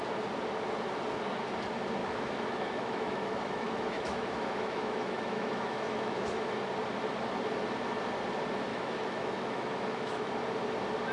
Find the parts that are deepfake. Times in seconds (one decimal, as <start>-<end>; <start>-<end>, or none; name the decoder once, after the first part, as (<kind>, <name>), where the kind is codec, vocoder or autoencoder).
2.0-6.5 (autoencoder, DAC-VAE); 8.7-10.3